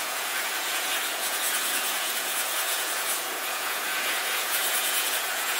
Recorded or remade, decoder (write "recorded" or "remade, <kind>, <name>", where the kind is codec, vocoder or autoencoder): remade, vocoder, Vocos